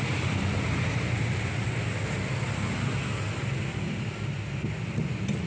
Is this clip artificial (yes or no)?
no